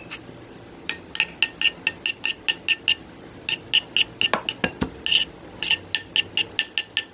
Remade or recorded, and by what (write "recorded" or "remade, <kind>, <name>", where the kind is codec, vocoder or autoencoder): recorded